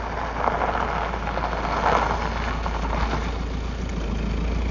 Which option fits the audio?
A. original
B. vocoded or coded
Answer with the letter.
A